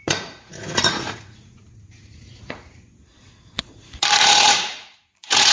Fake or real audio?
fake